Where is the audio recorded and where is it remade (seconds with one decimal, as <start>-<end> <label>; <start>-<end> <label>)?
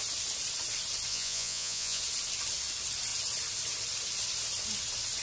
0.0-1.1 recorded; 1.1-2.0 remade; 2.0-5.2 recorded